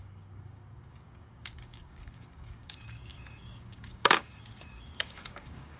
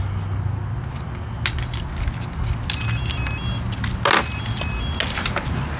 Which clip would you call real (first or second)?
second